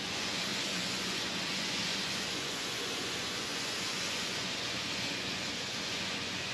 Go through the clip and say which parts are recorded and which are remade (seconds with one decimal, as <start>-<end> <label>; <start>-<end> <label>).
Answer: 0.0-6.5 remade